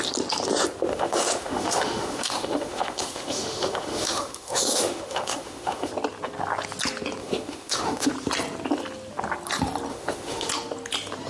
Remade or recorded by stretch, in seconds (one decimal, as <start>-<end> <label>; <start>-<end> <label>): 0.0-0.9 recorded; 0.9-5.9 remade; 5.9-7.2 recorded; 7.2-8.1 remade; 8.1-9.9 recorded; 9.9-10.5 remade; 10.5-11.3 recorded